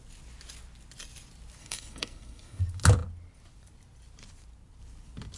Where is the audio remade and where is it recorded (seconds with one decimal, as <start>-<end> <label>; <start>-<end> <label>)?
0.0-1.6 recorded; 1.6-2.6 remade; 2.6-5.4 recorded